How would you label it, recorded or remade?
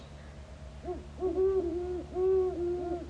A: recorded